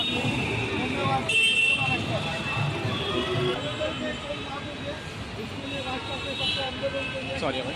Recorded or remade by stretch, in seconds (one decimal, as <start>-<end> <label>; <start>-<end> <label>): 0.0-7.8 recorded